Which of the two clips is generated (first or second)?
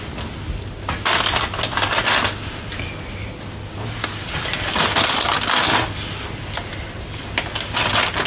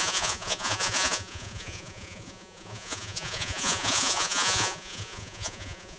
second